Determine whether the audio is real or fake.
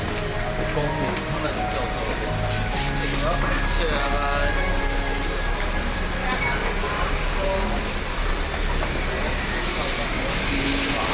real